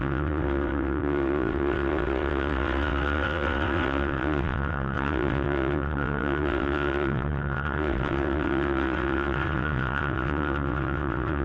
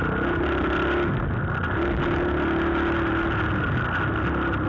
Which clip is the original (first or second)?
second